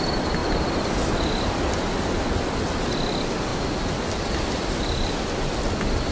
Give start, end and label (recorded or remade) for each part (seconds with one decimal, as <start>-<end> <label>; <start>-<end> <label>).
0.0-0.4 recorded; 0.4-1.3 remade; 1.3-3.5 recorded; 3.5-5.1 remade; 5.1-6.1 recorded